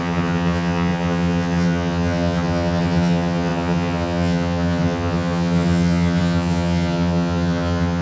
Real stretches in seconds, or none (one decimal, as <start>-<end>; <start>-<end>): none